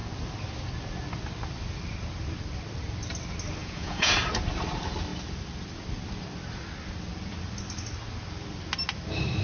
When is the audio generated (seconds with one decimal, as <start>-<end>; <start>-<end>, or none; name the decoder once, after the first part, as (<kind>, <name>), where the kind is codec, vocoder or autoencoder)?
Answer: 3.6-4.1 (vocoder, Vocos)